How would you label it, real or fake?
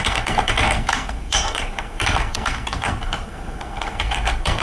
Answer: fake